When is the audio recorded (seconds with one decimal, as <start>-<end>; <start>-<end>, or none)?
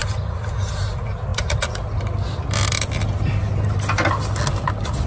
0.0-5.1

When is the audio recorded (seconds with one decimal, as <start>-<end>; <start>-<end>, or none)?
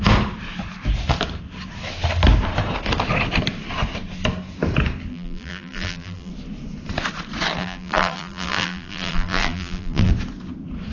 0.0-5.1; 6.3-7.6; 10.1-10.9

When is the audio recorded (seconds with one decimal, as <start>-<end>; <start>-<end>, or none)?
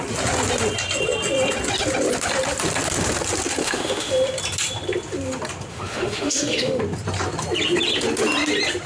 0.0-3.6; 4.1-5.7; 6.8-8.9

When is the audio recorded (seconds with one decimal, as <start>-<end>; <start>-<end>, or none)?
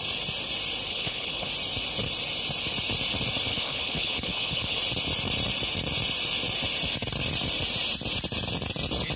0.0-0.9; 1.5-3.5; 4.8-9.2